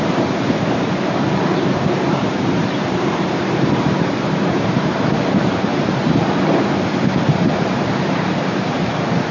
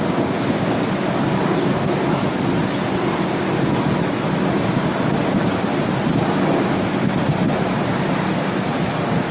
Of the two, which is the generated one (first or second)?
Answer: first